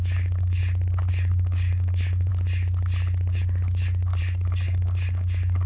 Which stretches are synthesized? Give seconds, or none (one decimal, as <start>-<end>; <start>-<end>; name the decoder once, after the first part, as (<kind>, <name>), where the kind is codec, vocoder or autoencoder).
0.0-0.6 (codec, DAC); 1.1-2.3; 4.2-5.7